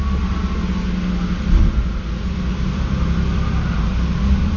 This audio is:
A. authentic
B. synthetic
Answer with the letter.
A